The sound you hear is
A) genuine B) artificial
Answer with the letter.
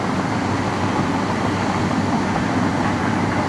A